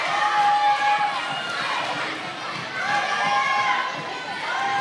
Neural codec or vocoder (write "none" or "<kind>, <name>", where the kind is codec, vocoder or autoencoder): none